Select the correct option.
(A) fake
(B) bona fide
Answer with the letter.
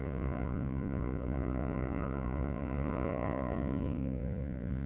A